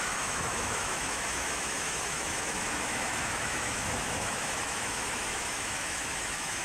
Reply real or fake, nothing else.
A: fake